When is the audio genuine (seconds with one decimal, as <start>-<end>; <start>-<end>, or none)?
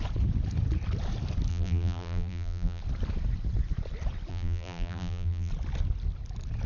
0.0-1.5; 2.8-4.3; 5.5-6.7